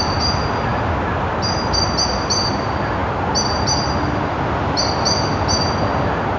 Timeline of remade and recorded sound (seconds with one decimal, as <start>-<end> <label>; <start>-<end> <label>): 0.0-6.4 recorded